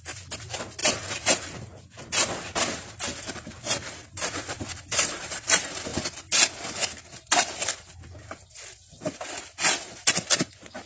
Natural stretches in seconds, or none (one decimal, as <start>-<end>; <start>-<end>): 0.0-10.9